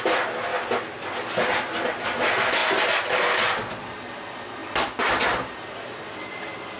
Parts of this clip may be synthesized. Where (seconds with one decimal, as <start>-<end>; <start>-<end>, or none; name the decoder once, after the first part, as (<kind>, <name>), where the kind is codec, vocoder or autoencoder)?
none